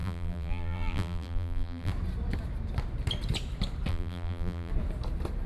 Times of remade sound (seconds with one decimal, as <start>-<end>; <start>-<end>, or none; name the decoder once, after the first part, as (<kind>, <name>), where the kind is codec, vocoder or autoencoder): 0.0-1.9 (vocoder, BigVGAN v2); 3.9-4.7